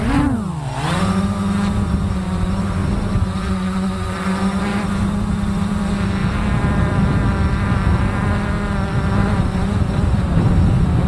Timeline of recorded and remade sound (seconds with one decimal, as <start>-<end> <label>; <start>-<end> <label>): 0.0-4.7 recorded; 4.7-5.3 remade; 5.3-9.2 recorded; 9.2-10.5 remade; 10.5-11.1 recorded

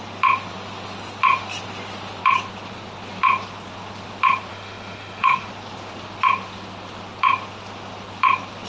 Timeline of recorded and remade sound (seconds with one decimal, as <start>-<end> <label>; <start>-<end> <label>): 0.0-4.5 recorded; 4.5-5.5 remade; 5.5-8.7 recorded